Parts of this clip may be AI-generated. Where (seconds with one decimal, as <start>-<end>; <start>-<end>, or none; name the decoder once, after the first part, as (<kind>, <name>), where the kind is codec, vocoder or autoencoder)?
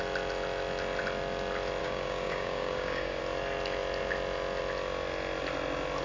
1.8-3.2 (codec, DAC)